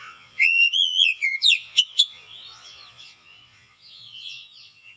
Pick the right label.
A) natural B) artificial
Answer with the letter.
B